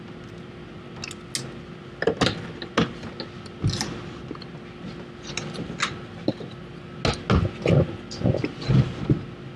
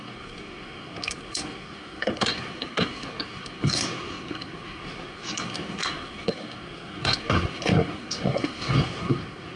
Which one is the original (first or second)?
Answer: first